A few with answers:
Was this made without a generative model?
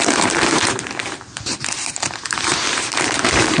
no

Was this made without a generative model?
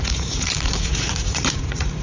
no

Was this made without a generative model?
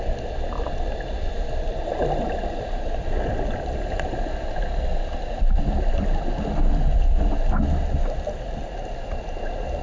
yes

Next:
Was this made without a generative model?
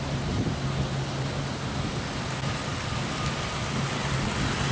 yes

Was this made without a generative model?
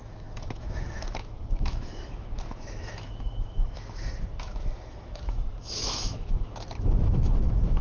no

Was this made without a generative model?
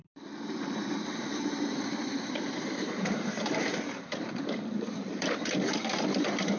no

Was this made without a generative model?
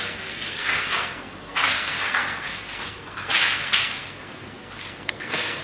no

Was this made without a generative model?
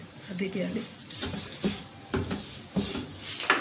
yes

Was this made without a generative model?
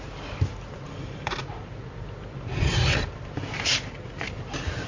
yes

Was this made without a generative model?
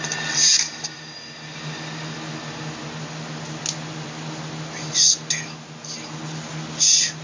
yes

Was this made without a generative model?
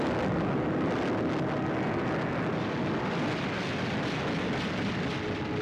yes